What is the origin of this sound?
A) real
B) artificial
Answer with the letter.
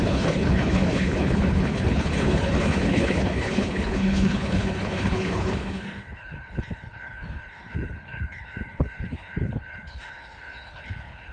B